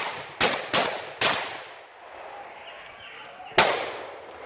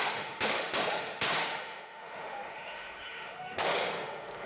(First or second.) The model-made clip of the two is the second